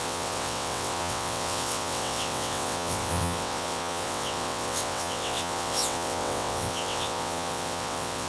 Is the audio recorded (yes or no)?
no